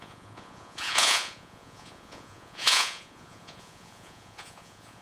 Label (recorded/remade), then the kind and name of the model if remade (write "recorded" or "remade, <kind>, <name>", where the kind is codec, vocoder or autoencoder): remade, vocoder, Vocos